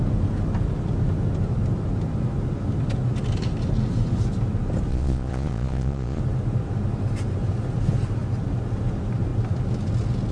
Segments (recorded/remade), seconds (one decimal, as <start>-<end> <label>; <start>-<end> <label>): 0.0-4.9 recorded; 4.9-6.2 remade; 6.2-10.3 recorded